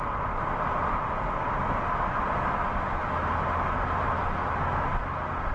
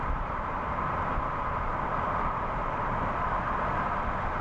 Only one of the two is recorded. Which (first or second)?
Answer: first